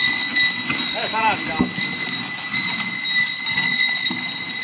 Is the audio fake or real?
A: real